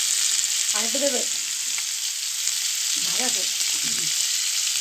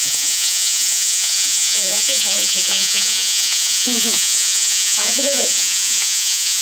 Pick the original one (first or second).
first